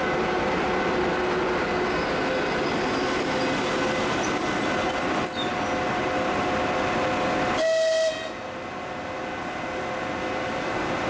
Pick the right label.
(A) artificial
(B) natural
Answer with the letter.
B